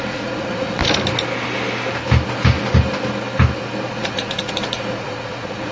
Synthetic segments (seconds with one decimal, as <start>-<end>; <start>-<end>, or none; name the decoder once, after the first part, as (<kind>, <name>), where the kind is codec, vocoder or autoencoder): 0.0-0.8 (vocoder, Vocos); 3.9-5.7